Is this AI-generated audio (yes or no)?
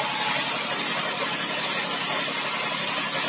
no